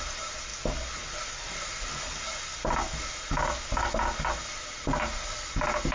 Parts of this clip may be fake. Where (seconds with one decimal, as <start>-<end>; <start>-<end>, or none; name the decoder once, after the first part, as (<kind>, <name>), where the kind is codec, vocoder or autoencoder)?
none